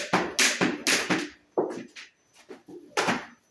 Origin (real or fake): real